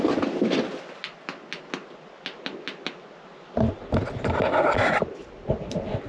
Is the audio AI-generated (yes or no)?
no